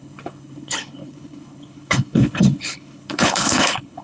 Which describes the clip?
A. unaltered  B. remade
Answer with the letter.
B